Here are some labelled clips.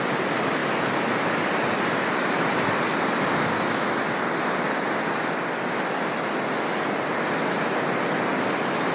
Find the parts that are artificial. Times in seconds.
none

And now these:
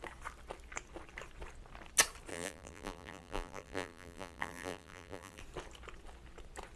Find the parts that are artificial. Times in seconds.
2.3-5.4 (vocoder, BigVGAN v2)